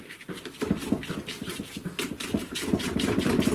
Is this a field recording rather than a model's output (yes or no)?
no